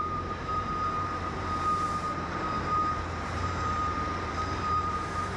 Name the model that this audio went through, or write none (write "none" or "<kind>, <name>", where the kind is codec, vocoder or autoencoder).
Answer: vocoder, BigVGAN v2